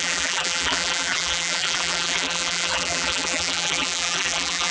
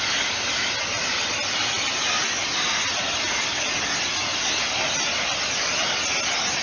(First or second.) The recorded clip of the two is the second